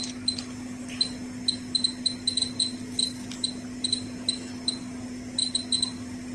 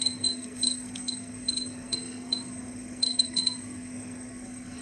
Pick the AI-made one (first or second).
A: second